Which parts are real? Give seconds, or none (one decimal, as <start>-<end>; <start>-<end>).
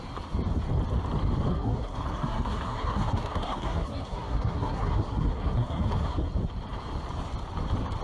0.0-1.5; 6.3-8.0